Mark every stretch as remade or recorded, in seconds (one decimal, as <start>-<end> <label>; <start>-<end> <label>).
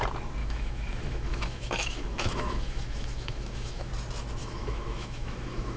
0.0-0.4 recorded; 0.4-3.9 remade; 3.9-4.4 recorded; 4.4-5.8 remade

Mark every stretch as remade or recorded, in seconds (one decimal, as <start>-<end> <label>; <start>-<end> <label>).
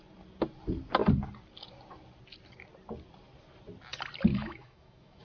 0.0-4.3 recorded; 4.3-5.2 remade